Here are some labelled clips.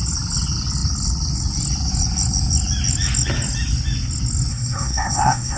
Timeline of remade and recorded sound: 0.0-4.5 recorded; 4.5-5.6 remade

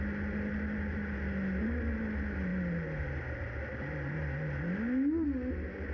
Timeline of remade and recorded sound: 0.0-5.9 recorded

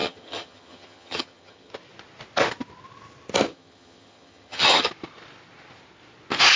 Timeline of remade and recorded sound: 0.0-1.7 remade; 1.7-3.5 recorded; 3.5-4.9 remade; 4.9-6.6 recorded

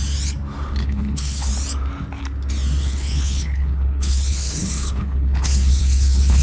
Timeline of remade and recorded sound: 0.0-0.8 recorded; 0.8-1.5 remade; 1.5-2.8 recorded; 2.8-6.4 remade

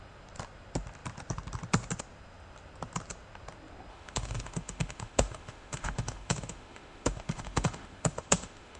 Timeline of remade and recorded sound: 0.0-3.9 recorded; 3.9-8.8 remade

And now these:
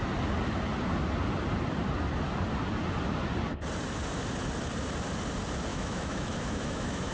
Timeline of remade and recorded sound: 0.0-5.7 recorded; 5.7-7.1 remade

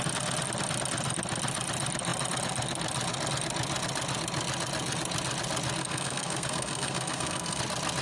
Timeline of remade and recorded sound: 0.0-5.8 recorded; 5.8-7.6 remade; 7.6-8.0 recorded